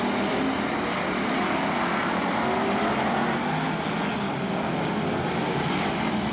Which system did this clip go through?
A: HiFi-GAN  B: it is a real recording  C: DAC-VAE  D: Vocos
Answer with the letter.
B